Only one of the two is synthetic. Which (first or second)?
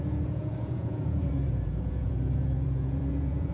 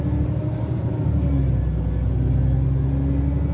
first